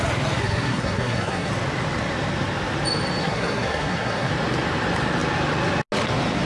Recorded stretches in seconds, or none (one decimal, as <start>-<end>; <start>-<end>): 0.0-0.4; 1.5-3.2; 4.3-6.5